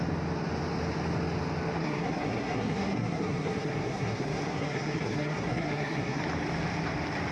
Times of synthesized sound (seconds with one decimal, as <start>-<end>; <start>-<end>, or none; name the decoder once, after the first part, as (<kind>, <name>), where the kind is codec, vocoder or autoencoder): 1.8-6.2 (codec, SNAC)